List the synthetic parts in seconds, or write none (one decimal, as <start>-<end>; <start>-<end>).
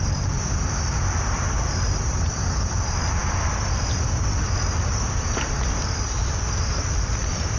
0.0-7.6